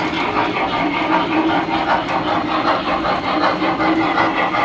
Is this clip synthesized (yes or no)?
yes